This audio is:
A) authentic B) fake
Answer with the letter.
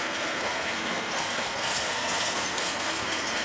B